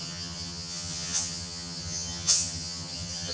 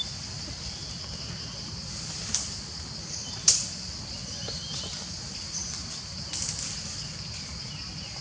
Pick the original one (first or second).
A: second